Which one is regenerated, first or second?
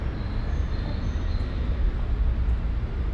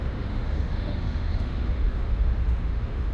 second